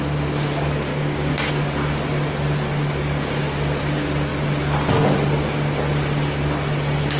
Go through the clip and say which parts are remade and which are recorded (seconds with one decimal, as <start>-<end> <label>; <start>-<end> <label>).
0.0-0.9 recorded; 0.9-1.5 remade; 1.5-7.2 recorded